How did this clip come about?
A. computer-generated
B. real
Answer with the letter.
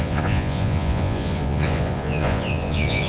A